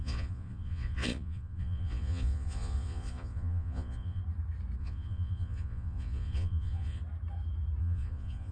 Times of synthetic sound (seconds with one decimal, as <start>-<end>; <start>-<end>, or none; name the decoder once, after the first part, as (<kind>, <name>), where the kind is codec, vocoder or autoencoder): 0.0-4.2 (vocoder, Vocos); 4.8-7.0; 7.8-8.5